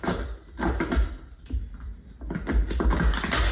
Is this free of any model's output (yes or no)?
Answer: yes